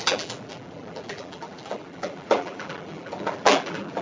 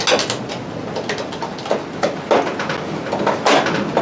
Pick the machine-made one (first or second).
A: first